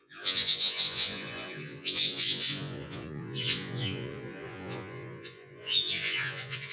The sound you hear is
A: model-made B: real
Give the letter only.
A